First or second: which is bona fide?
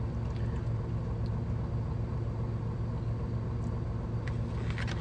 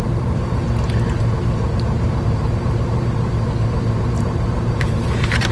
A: first